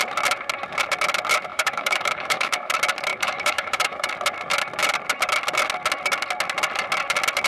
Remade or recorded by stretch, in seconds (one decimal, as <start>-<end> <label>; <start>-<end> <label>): 0.0-1.5 recorded; 1.5-2.7 remade; 2.7-3.1 recorded; 3.1-4.1 remade; 4.1-7.5 recorded